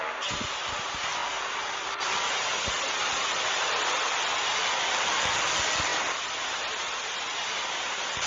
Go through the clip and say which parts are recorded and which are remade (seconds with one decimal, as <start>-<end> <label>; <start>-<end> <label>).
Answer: 0.0-1.2 remade; 1.2-1.7 recorded; 1.7-8.3 remade